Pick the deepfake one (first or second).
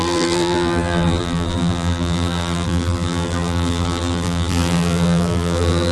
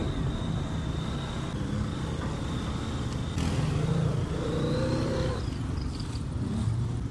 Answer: first